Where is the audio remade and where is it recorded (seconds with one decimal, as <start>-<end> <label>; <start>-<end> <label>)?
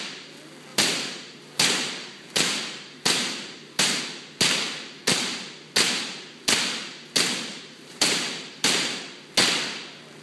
0.0-0.7 recorded; 0.7-4.0 remade; 4.0-7.5 recorded; 7.5-9.0 remade; 9.0-10.2 recorded